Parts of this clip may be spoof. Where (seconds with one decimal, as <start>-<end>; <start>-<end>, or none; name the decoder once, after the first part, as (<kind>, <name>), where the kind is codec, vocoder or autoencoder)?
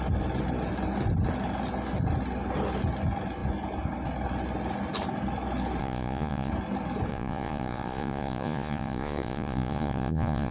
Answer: 5.8-6.5 (vocoder, Vocos); 7.1-10.5